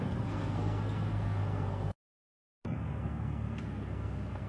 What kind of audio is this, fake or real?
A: fake